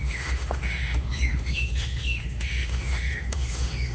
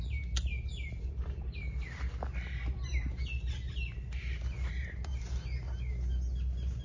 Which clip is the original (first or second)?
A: second